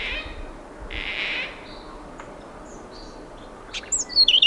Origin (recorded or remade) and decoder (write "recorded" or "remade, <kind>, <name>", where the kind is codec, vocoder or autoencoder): recorded